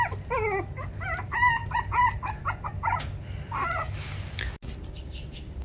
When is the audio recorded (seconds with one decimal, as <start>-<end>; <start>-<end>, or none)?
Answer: 0.0-5.6